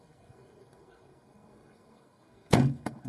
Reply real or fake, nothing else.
fake